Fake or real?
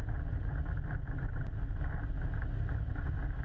real